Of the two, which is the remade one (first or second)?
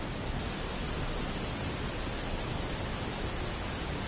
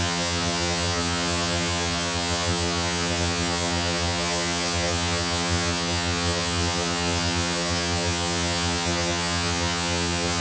second